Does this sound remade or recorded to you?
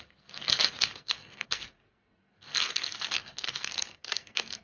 remade